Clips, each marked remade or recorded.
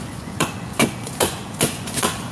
remade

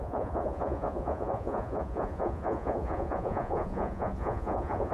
remade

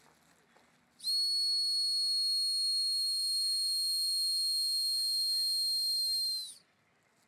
recorded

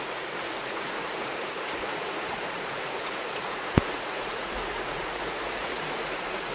remade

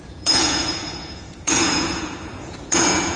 remade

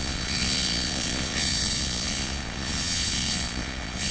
remade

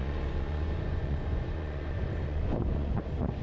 remade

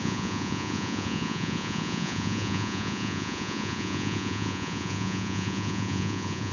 remade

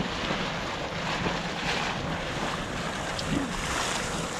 recorded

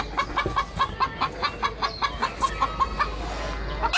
recorded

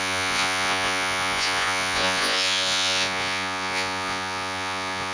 remade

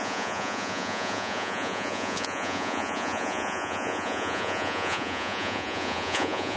remade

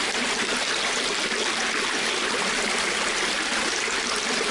recorded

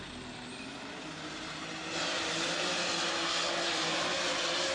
recorded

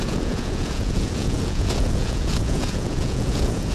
remade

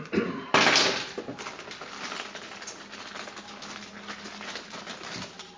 recorded